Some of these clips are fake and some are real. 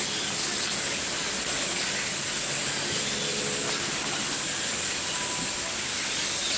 real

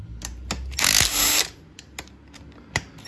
real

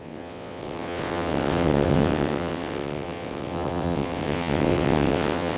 fake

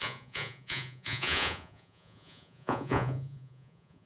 fake